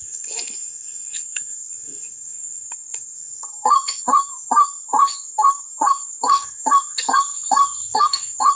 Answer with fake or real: fake